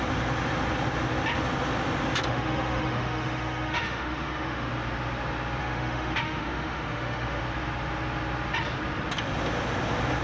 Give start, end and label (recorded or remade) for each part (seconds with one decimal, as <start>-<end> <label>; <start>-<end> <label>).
0.0-2.3 recorded; 2.3-4.7 remade; 4.7-5.6 recorded; 5.6-7.4 remade; 7.4-10.2 recorded